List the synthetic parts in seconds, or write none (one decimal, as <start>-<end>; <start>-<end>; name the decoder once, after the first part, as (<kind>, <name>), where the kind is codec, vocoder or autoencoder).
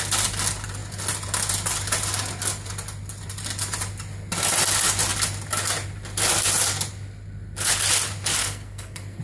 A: 8.4-9.2 (codec, SNAC)